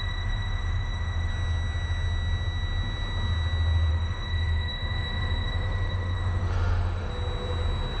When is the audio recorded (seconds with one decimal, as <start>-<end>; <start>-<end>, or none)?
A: 1.3-3.9; 7.1-8.0